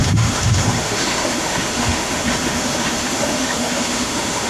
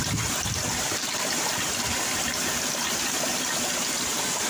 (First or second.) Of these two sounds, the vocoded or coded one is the first